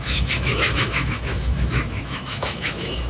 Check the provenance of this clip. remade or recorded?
remade